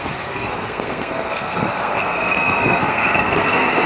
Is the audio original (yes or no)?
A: no